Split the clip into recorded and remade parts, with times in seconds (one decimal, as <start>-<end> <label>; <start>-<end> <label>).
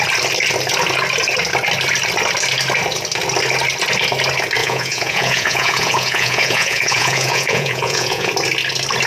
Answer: 0.0-4.6 recorded; 4.6-8.3 remade; 8.3-9.1 recorded